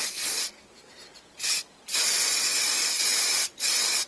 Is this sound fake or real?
real